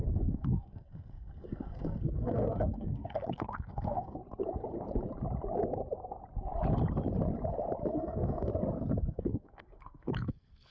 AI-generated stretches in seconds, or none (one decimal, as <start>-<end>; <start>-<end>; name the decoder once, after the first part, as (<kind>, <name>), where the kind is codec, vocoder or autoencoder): 0.0-4.2 (codec, SNAC); 7.9-8.5; 9.0-10.7